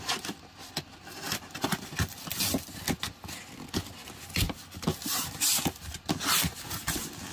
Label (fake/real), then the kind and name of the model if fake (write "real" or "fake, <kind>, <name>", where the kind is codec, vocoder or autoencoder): real